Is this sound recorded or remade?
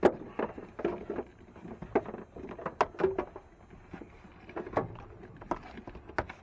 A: recorded